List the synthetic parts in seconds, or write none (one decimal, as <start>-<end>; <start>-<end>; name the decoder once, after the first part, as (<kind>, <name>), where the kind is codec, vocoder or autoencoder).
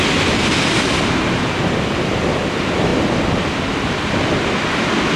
1.4-2.2 (vocoder, BigVGAN v2)